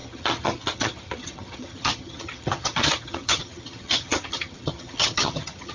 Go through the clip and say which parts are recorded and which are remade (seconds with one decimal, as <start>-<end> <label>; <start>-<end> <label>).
0.0-5.7 remade

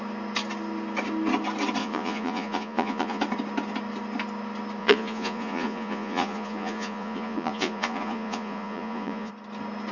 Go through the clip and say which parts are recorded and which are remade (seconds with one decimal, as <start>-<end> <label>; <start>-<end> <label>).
0.0-1.8 recorded; 1.8-3.2 remade; 3.2-4.8 recorded; 4.8-9.3 remade; 9.3-9.9 recorded